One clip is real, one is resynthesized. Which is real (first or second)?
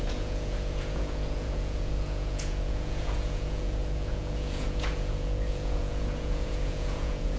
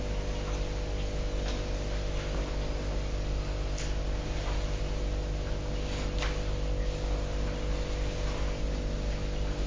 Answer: second